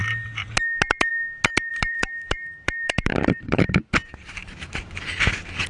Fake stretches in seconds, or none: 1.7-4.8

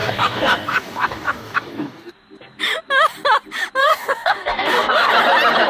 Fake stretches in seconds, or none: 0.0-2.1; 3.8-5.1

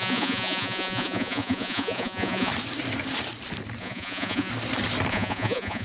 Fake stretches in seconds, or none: 0.0-2.5; 3.8-4.5; 5.1-5.8